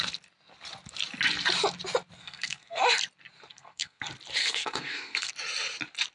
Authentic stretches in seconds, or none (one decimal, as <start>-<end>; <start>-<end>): 0.0-2.2; 2.8-3.5; 4.0-4.4; 5.3-6.1

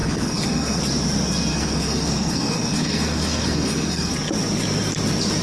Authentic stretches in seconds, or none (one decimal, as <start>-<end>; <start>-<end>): 0.8-1.5; 4.1-5.4

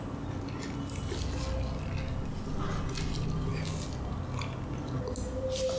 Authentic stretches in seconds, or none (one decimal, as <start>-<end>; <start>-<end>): 0.0-5.8

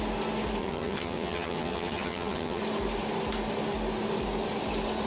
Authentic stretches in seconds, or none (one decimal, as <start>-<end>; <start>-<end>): 0.0-0.6; 2.6-5.1